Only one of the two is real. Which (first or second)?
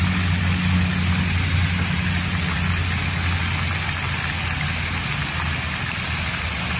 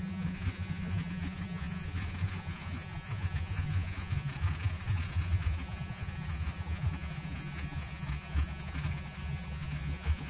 first